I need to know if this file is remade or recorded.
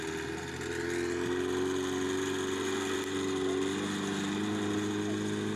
recorded